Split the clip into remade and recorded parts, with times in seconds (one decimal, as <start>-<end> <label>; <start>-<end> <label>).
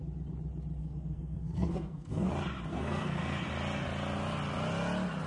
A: 0.0-0.8 recorded; 0.8-2.3 remade; 2.3-2.7 recorded; 2.7-3.4 remade; 3.4-5.3 recorded